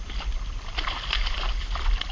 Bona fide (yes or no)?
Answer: yes